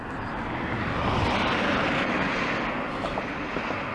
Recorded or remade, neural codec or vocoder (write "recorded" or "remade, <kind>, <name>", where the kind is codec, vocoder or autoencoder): recorded